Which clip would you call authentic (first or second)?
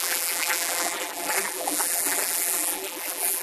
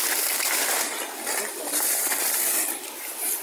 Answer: second